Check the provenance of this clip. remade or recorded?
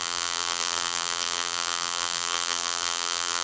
remade